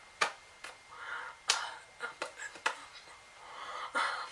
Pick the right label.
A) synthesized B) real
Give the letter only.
B